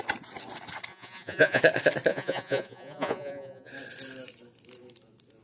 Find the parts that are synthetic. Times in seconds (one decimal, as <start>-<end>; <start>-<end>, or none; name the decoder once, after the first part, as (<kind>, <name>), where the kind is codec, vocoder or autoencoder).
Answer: 0.9-1.6 (vocoder, Vocos); 2.1-3.7